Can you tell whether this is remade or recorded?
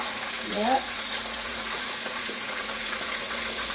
remade